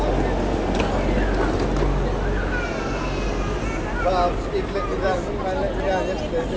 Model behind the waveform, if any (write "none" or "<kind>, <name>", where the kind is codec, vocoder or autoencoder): none